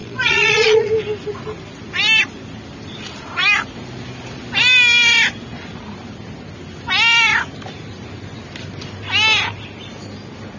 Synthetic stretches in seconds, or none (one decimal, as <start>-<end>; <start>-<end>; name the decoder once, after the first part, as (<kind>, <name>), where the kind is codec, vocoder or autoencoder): 0.0-0.9 (vocoder, Vocos)